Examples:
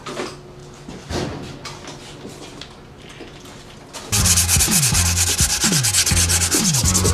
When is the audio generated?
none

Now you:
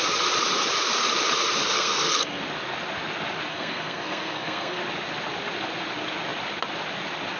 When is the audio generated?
1.6-2.4 (codec, SNAC); 3.5-4.8

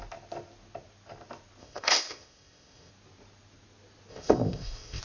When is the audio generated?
1.6-2.9 (codec, ZipCodec); 4.1-5.0

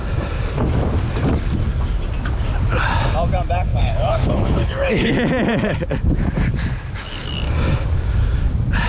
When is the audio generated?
3.7-5.1 (codec, HILCodec)

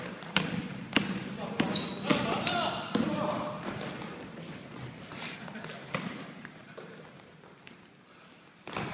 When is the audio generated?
6.6-7.3 (vocoder, BigVGAN v2)

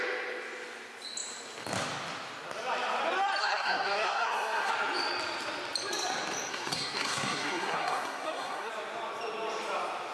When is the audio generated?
3.4-4.7 (codec, SNAC); 6.5-8.7

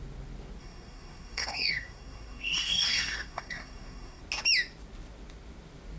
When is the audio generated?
0.6-4.2 (codec, SNAC)

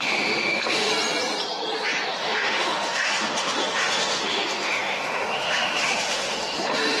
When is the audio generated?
0.0-0.9 (autoencoder, DAC-VAE); 2.2-7.0